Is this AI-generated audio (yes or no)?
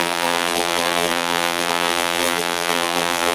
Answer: yes